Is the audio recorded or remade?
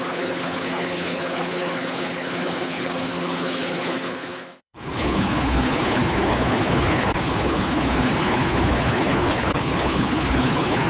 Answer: remade